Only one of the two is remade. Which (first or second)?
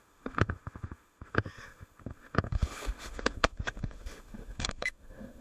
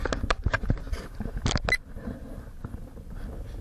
first